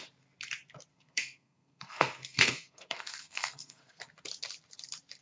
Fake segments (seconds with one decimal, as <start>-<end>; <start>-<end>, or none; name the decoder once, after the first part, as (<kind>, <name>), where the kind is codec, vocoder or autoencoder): 0.9-4.0 (codec, SNAC)

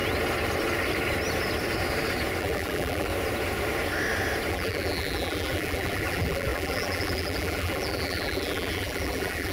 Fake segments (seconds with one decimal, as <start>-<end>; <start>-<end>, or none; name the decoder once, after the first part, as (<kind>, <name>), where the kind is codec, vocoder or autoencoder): 2.4-3.1 (vocoder, BigVGAN v2); 4.5-9.5

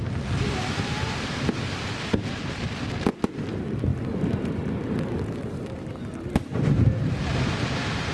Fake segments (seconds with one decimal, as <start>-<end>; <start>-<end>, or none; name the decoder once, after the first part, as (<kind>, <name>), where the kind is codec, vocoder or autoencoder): none